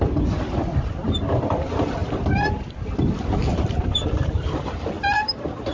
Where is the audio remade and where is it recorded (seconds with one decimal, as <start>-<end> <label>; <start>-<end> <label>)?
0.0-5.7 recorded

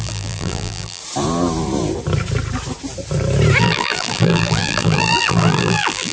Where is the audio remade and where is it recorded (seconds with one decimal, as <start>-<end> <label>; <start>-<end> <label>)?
0.0-1.0 remade; 1.0-3.6 recorded; 3.6-6.1 remade

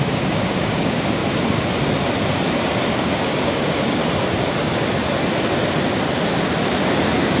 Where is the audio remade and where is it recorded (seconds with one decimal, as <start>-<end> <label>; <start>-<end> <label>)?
0.0-1.2 remade; 1.2-3.0 recorded; 3.0-4.0 remade; 4.0-7.4 recorded

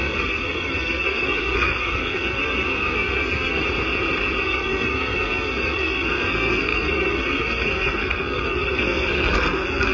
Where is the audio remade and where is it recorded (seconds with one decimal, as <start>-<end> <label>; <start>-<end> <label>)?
0.0-3.6 remade; 3.6-4.4 recorded; 4.4-9.9 remade

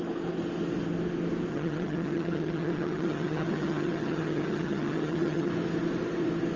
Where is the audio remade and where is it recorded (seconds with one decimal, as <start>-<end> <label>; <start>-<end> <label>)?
0.0-1.5 recorded; 1.5-5.5 remade; 5.5-6.6 recorded

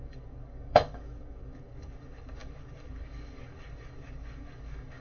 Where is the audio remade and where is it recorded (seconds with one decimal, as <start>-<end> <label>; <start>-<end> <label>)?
0.0-5.0 remade